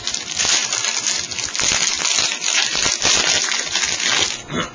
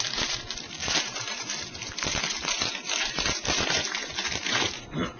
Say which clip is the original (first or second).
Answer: first